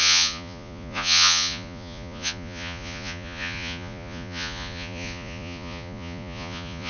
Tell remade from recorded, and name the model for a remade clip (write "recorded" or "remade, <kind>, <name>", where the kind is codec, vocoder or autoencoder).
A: remade, vocoder, Vocos